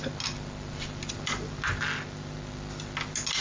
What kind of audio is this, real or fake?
real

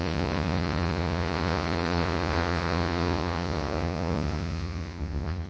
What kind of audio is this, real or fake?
fake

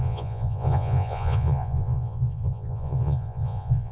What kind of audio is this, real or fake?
fake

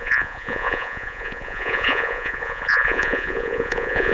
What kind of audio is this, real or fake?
fake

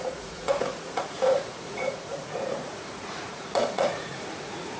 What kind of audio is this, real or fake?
fake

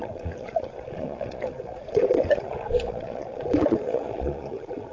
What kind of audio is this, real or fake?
fake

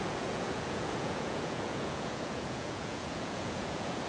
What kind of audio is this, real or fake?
fake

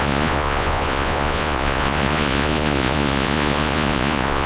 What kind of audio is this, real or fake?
fake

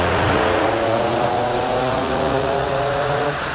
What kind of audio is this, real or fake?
fake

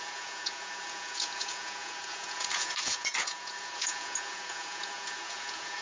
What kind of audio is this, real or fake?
fake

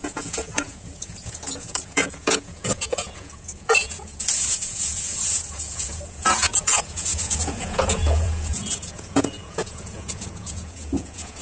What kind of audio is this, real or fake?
fake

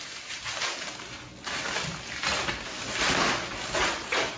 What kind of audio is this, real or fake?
real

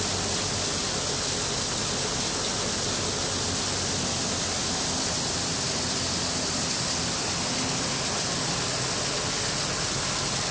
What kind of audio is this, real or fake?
real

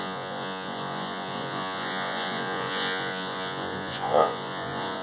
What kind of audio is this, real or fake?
fake